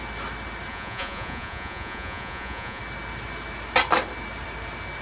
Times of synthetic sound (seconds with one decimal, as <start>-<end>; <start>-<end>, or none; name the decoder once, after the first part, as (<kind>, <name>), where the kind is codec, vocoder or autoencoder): 0.7-2.8 (vocoder, Vocos)

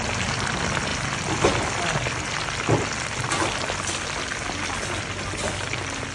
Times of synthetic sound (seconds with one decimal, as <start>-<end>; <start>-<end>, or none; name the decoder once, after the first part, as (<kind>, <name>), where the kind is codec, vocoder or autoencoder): none

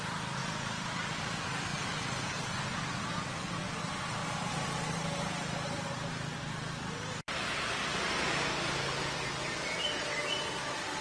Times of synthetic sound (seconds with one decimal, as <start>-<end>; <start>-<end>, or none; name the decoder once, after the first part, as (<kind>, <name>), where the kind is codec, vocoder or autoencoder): 4.2-7.3 (vocoder, BigVGAN v2)

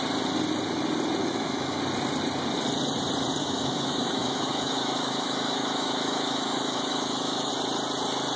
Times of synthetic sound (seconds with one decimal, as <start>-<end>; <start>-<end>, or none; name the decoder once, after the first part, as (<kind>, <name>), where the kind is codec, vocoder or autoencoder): 1.2-1.8 (autoencoder, DAC-VAE); 3.4-7.5